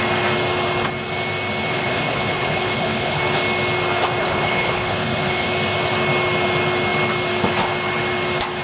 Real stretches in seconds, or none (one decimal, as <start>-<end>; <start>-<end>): 0.0-1.7; 3.2-4.2; 5.5-8.6